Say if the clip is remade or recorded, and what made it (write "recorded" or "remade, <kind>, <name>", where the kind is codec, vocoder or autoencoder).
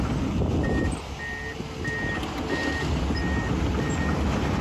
recorded